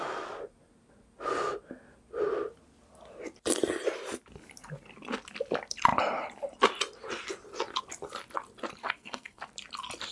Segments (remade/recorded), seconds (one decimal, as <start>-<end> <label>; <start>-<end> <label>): 0.0-8.8 recorded; 8.8-9.4 remade; 9.4-10.1 recorded